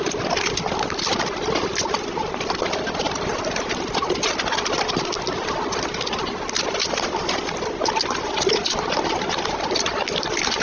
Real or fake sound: real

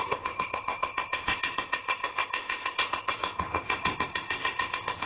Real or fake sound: fake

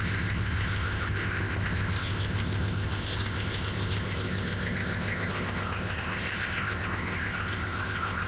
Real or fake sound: fake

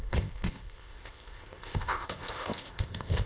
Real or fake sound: fake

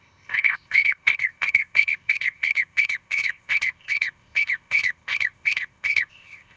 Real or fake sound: fake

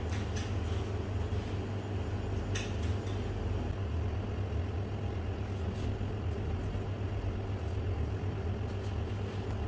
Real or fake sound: real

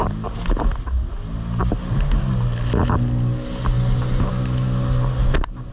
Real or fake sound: real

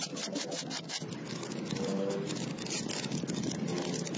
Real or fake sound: real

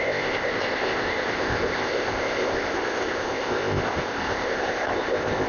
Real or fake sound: fake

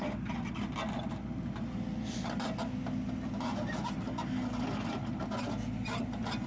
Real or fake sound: real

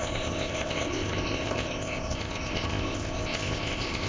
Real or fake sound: fake